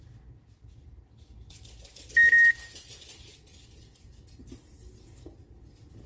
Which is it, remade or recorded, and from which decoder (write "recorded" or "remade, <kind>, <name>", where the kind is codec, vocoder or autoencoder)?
recorded